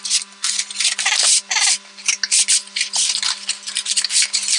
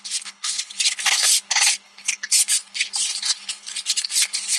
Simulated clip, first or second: second